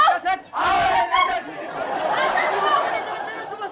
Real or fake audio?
real